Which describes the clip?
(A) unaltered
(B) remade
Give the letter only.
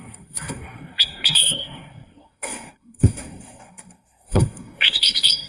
B